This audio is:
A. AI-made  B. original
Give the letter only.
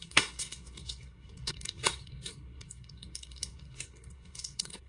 A